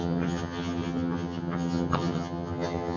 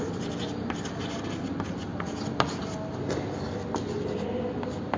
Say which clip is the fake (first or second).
first